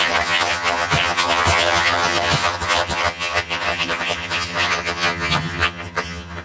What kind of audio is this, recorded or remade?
remade